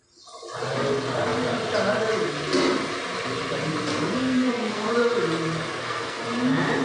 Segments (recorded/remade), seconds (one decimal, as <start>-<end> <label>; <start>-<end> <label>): 0.0-3.9 recorded; 3.9-4.9 remade; 4.9-5.7 recorded; 5.7-6.2 remade; 6.2-6.8 recorded